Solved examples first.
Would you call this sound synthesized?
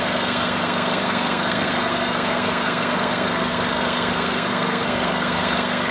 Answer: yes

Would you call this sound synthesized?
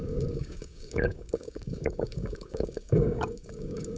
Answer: yes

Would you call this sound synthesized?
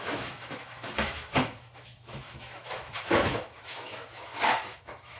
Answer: yes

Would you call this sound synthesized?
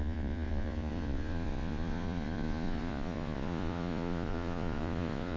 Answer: yes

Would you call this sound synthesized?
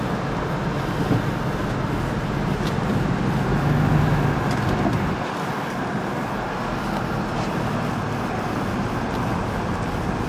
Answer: no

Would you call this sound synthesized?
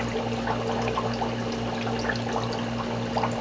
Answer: no